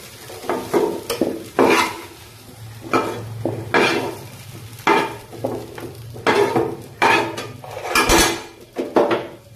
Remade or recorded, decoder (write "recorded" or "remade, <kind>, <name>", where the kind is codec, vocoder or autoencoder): recorded